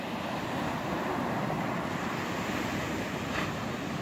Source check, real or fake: real